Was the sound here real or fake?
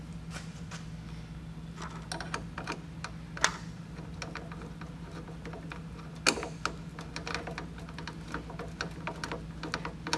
real